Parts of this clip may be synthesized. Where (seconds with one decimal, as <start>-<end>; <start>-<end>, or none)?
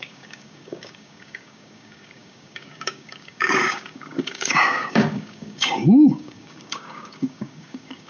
0.0-8.1